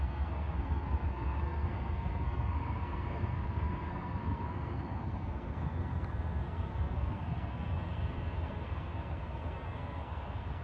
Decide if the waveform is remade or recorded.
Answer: remade